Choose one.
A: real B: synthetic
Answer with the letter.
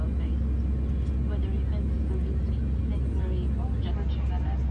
A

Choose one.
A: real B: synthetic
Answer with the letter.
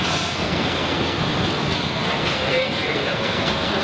B